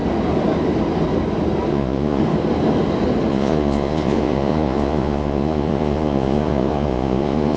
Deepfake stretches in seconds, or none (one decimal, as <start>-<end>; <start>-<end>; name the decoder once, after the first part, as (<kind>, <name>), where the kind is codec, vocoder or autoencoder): 1.7-2.2 (vocoder, Vocos); 3.3-7.6